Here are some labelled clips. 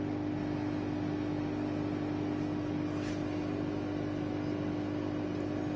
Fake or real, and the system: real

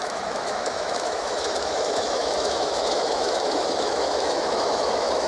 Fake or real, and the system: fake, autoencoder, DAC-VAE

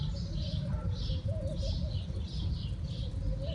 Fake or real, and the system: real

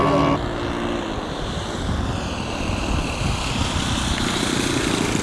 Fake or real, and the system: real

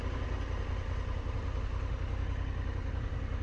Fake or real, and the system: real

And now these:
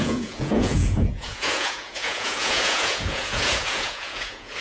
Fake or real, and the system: fake, vocoder, Vocos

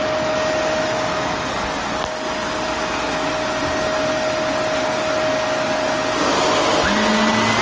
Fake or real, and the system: real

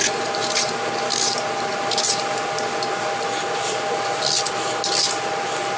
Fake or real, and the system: real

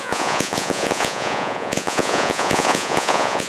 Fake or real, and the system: fake, vocoder, Vocos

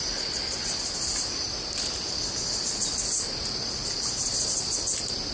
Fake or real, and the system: real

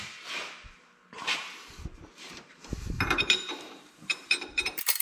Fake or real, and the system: fake, vocoder, BigVGAN v2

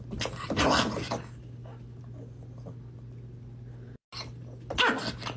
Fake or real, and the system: real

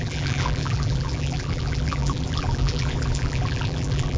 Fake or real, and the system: fake, vocoder, BigVGAN v2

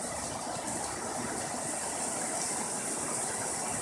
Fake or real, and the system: real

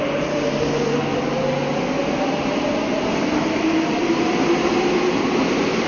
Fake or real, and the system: real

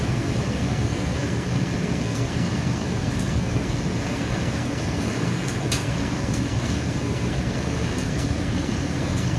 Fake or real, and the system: fake, codec, SNAC